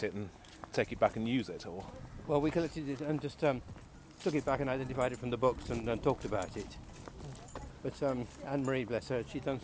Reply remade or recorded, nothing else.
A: recorded